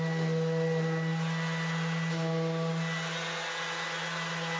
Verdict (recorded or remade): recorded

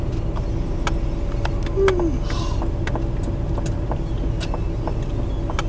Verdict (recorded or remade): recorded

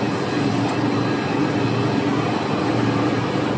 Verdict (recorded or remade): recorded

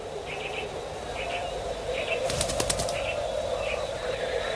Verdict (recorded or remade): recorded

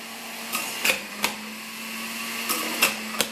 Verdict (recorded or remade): recorded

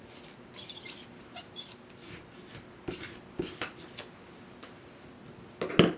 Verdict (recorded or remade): recorded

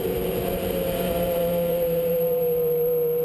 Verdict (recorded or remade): remade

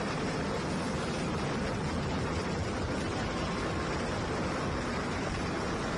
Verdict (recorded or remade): recorded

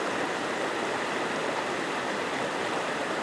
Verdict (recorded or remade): recorded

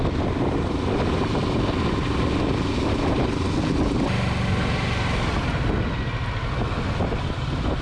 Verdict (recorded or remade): recorded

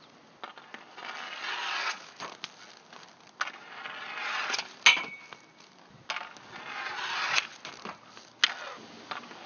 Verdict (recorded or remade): recorded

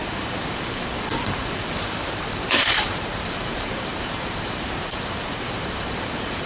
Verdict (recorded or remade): remade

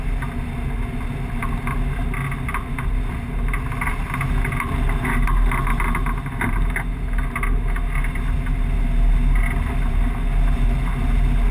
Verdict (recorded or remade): recorded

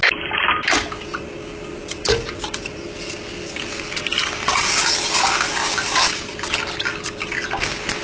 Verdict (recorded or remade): recorded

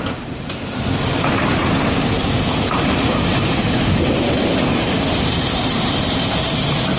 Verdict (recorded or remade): remade